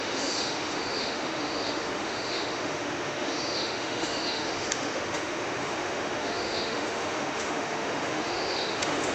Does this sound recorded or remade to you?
remade